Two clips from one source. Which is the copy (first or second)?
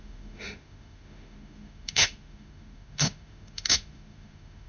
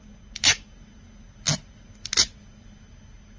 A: first